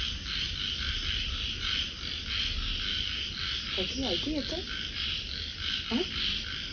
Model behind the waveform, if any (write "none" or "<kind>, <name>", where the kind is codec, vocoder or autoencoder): none